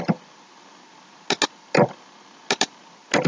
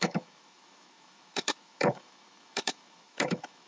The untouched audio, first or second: first